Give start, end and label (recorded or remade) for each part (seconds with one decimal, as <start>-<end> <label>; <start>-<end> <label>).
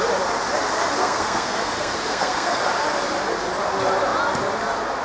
0.0-1.0 recorded; 1.0-2.6 remade; 2.6-5.0 recorded